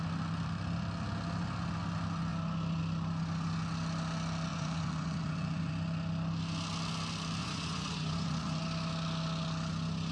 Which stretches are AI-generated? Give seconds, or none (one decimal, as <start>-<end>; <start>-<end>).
4.5-5.7; 7.4-8.6